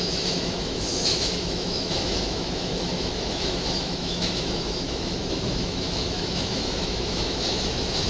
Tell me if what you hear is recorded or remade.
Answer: remade